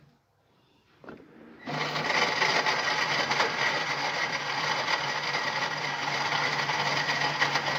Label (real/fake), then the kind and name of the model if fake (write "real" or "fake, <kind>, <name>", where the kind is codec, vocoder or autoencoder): real